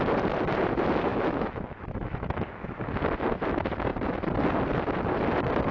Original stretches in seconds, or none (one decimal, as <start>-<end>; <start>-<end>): 0.0-1.1; 2.9-5.7